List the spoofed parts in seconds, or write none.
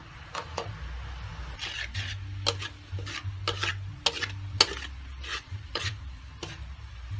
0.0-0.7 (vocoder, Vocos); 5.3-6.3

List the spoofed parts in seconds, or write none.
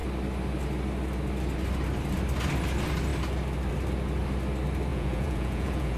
4.9-6.0 (vocoder, Vocos)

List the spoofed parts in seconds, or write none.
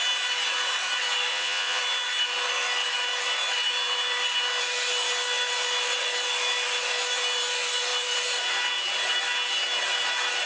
1.3-1.8 (vocoder, Vocos)